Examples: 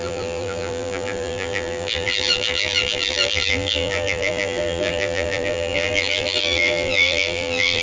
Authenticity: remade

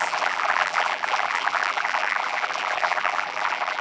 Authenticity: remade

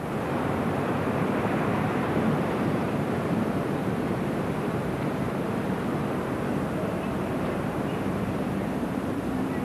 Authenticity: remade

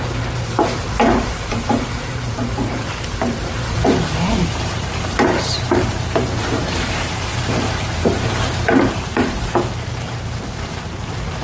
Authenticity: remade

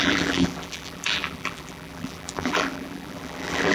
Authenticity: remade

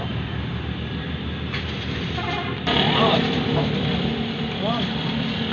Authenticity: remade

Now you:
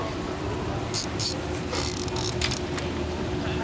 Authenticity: recorded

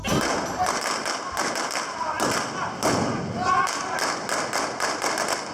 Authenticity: recorded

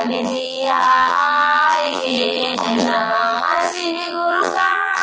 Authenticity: remade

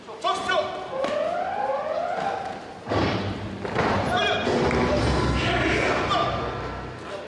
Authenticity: recorded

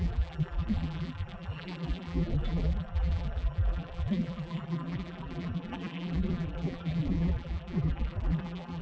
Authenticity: remade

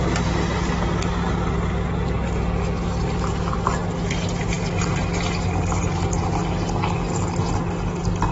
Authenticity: recorded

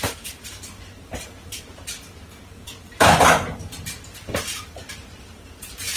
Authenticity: remade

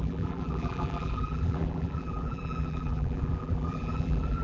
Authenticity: remade